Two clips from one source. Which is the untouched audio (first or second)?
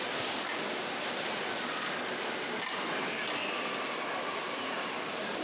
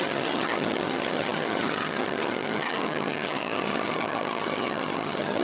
first